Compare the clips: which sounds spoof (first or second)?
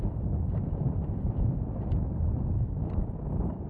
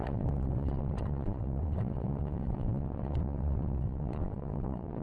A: second